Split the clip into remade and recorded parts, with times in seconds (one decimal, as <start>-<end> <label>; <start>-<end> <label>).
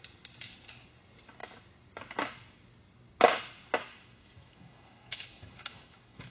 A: 0.0-3.9 recorded; 3.9-6.3 remade